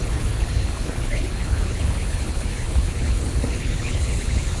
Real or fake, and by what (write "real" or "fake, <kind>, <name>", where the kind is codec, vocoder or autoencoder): fake, codec, HILCodec